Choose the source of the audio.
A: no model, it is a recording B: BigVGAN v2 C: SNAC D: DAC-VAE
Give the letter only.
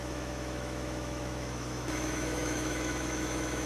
D